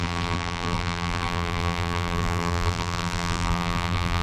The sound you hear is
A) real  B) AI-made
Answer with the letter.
B